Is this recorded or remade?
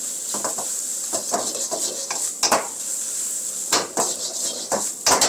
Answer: recorded